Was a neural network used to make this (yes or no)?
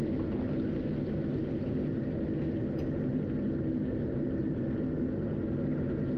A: no